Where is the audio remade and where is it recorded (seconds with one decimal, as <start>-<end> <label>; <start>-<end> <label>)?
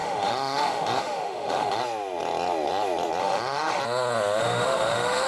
0.0-1.8 remade; 1.8-3.2 recorded; 3.2-3.8 remade; 3.8-4.4 recorded; 4.4-5.3 remade